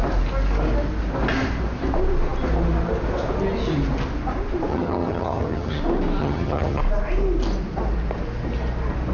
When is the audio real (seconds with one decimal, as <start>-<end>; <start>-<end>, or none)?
0.0-4.7; 5.8-6.2; 6.8-9.1